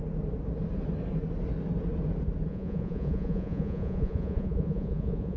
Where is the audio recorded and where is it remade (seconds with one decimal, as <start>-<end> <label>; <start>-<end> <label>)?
0.0-2.5 recorded; 2.5-5.4 remade